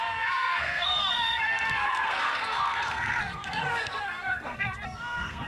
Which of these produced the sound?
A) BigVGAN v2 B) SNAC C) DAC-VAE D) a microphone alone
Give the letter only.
B